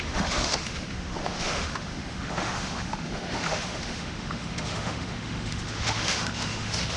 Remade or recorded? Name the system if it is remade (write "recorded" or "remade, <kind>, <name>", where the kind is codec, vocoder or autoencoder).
remade, autoencoder, DAC-VAE